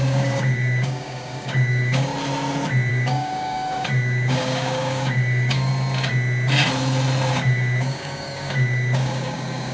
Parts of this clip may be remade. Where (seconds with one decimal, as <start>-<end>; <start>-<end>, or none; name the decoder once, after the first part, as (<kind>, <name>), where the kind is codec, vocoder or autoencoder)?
0.0-2.1 (codec, DAC); 2.9-5.7; 7.3-9.7